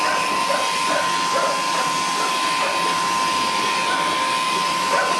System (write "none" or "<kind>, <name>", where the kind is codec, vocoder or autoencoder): none